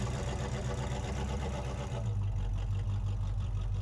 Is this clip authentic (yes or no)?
no